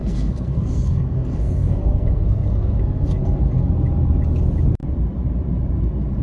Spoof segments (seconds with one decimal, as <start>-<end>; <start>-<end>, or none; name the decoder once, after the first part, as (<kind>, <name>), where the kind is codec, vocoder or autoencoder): 0.0-3.7 (codec, SNAC)

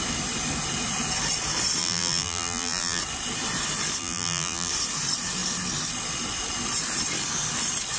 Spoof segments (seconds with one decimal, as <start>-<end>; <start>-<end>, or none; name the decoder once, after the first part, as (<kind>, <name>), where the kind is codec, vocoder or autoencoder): 1.8-3.0 (vocoder, BigVGAN v2); 4.0-4.7

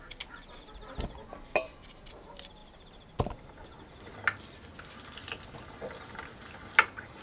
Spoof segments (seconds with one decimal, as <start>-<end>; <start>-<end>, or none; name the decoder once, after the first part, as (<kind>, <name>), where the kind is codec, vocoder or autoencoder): none